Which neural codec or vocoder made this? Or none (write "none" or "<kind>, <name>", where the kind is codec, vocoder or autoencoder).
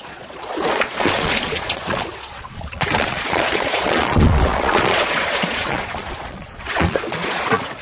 vocoder, Vocos